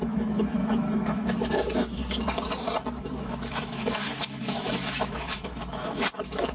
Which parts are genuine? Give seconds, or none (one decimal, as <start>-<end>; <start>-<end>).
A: 2.0-3.0